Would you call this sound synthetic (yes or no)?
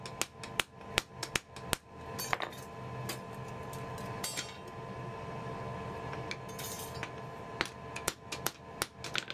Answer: no